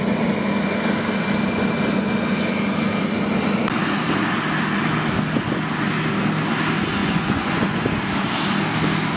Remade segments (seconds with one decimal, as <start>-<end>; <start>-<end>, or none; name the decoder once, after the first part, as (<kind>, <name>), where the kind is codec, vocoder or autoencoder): 7.0-7.8 (vocoder, Vocos)